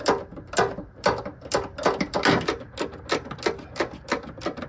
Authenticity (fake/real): real